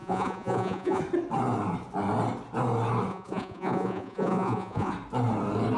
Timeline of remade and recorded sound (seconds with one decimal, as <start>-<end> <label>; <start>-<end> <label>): 0.0-1.0 remade; 1.0-3.1 recorded; 3.1-4.9 remade; 4.9-5.8 recorded

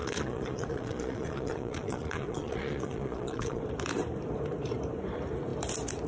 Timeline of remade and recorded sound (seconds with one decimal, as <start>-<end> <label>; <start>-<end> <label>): 0.0-3.6 remade; 3.6-6.1 recorded

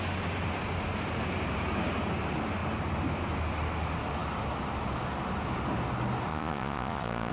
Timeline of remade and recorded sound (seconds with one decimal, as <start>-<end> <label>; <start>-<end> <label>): 0.0-6.3 recorded; 6.3-7.3 remade